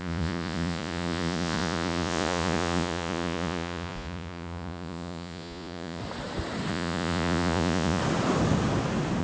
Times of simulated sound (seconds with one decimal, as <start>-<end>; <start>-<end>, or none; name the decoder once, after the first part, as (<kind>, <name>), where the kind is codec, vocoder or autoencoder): 0.0-6.0 (vocoder, Vocos); 6.7-8.0